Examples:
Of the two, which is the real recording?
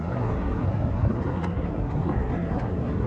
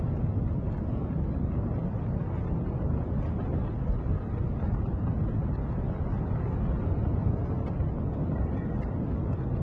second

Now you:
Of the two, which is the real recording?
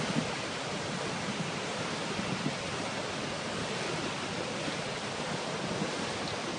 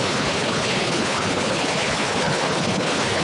first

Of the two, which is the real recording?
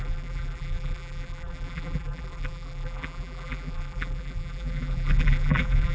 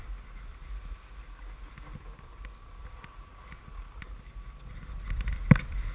second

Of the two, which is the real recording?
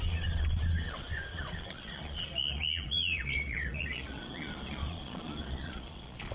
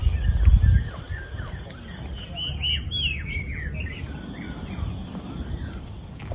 second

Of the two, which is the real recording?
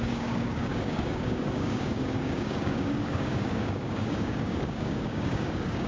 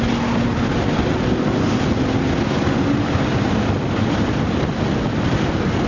second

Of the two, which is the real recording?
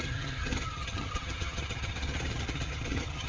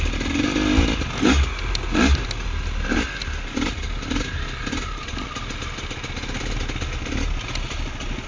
second